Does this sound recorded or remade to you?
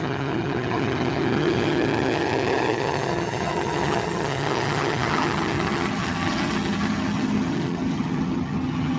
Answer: remade